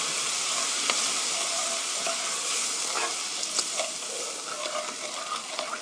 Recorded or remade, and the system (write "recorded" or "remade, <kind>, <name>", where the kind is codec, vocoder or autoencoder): recorded